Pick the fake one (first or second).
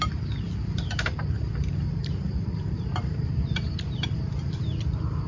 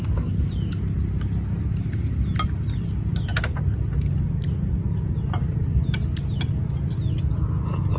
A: first